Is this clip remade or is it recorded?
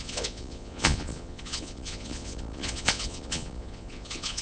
remade